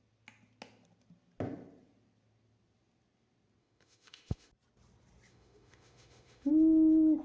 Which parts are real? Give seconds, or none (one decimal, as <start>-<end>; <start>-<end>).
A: 0.0-3.6; 4.5-5.3; 6.5-7.2

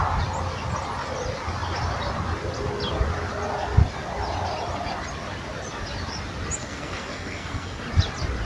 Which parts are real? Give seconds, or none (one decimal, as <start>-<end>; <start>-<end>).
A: 0.0-6.6; 7.8-8.5

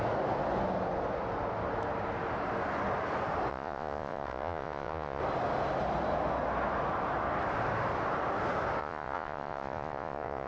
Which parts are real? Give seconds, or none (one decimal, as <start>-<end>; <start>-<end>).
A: 0.0-3.5; 5.2-8.8

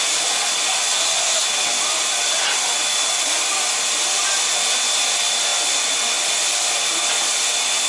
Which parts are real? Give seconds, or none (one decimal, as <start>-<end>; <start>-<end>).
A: 0.0-5.5; 7.0-7.9

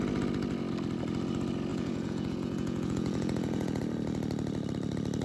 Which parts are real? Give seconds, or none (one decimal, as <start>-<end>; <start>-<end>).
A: 0.0-1.7; 3.8-5.2

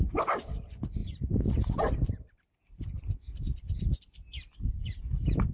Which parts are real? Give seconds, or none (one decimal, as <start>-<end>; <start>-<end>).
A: 0.0-1.0; 4.0-4.7